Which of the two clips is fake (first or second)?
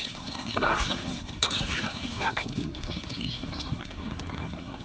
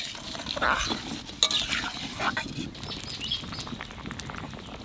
first